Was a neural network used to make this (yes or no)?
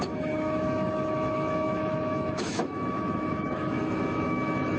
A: yes